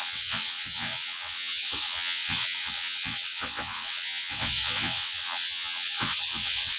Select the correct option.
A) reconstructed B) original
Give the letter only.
A